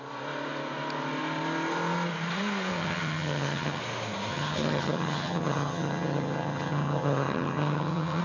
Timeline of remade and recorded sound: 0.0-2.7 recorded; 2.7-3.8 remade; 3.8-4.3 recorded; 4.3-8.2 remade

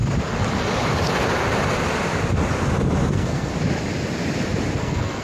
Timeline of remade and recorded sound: 0.0-3.1 recorded; 3.1-3.5 remade; 3.5-4.8 recorded; 4.8-5.2 remade

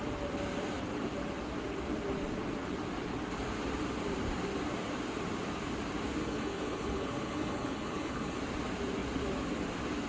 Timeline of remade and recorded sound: 0.0-6.2 recorded; 6.2-8.4 remade; 8.4-10.1 recorded

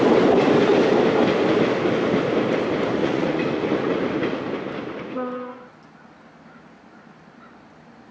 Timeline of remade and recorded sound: 0.0-3.0 recorded; 3.0-4.0 remade; 4.0-8.1 recorded

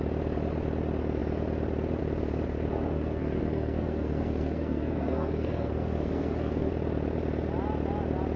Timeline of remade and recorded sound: 0.0-2.7 recorded; 2.7-6.7 remade; 6.7-8.4 recorded